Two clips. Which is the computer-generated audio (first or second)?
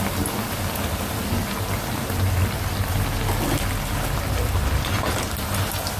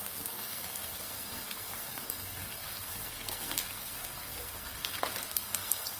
second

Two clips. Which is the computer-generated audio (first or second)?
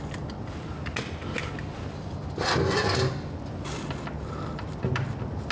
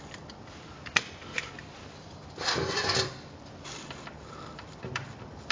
second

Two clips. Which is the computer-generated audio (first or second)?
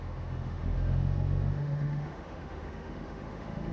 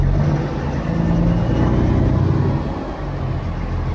first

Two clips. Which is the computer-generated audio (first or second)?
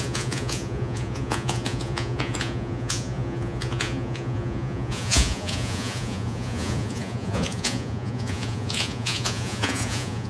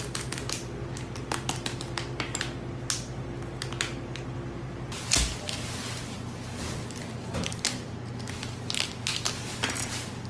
first